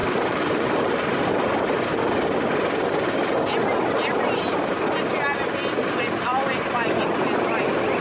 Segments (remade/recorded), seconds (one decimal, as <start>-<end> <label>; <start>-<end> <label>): 0.0-1.3 remade; 1.3-8.0 recorded